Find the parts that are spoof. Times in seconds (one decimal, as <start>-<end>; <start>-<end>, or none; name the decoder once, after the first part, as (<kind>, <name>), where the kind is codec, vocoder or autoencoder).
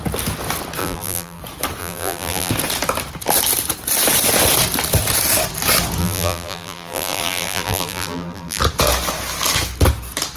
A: 0.8-1.4 (vocoder, BigVGAN v2); 1.8-2.5; 6.0-8.6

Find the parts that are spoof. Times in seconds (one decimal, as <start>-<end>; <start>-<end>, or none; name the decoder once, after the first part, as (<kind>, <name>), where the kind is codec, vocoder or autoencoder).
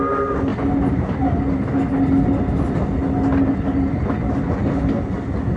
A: none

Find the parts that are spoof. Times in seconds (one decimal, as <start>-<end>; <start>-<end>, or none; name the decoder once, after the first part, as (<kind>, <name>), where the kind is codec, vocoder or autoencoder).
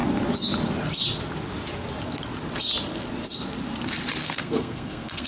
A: 4.2-5.3 (codec, SNAC)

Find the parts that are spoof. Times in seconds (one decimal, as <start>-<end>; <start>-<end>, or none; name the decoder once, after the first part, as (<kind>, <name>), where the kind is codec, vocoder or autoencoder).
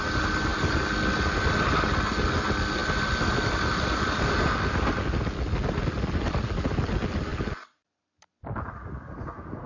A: none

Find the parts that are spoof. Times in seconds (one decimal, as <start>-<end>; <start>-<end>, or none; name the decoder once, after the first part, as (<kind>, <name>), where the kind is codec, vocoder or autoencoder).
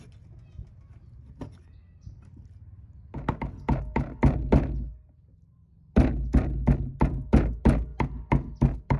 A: none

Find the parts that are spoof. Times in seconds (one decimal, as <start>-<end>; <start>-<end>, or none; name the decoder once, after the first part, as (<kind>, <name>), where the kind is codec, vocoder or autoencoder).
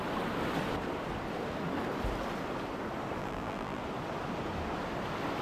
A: 3.2-3.8 (vocoder, BigVGAN v2)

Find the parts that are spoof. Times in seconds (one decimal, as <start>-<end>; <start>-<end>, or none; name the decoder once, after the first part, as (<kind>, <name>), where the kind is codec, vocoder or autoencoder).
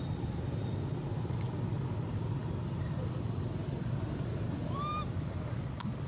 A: none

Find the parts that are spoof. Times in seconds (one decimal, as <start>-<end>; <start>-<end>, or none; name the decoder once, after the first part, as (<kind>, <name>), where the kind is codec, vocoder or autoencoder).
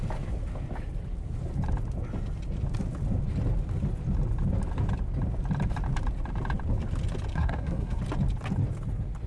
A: 7.3-8.0 (codec, SNAC)